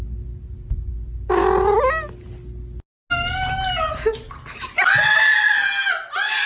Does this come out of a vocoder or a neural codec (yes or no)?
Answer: no